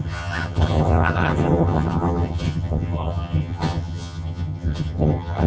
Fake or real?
fake